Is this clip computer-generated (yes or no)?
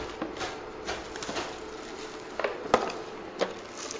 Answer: no